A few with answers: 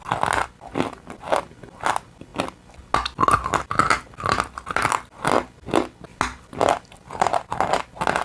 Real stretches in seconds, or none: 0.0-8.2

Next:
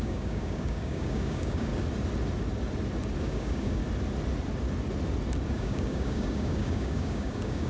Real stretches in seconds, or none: 1.7-3.2; 3.8-5.5

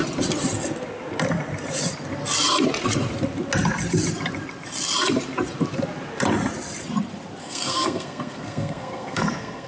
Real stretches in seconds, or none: 0.0-7.4

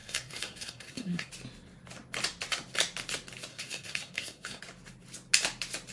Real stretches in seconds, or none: 1.3-3.5; 4.6-5.9

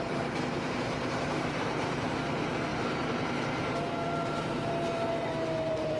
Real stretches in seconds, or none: none

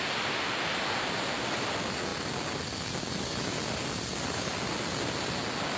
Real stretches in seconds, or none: 0.0-5.8